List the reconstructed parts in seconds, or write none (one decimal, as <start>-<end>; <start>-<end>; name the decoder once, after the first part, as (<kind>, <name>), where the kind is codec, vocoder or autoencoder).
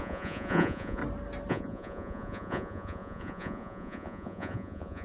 0.0-1.0 (vocoder, Vocos); 1.5-5.0